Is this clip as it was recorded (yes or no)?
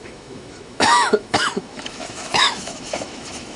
no